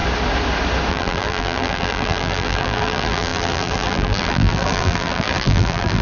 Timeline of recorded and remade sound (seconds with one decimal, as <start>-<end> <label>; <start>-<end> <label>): 0.0-0.9 recorded; 0.9-6.0 remade